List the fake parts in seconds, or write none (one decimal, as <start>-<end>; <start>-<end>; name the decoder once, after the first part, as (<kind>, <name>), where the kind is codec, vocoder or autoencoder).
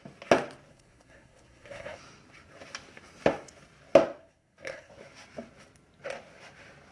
0.7-2.0 (codec, SNAC); 4.2-4.9